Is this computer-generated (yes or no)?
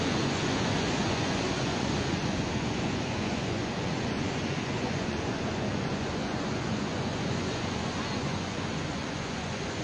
yes